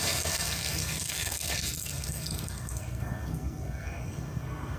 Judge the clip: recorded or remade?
remade